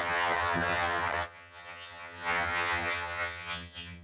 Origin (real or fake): fake